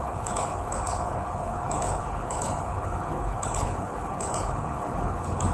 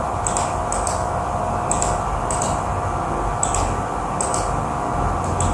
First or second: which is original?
second